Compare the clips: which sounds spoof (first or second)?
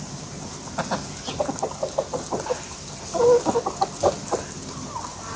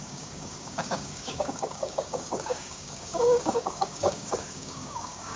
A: second